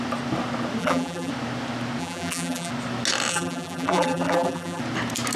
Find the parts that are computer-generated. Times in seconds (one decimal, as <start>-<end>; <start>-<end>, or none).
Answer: 0.8-1.3; 2.0-2.7; 3.3-4.8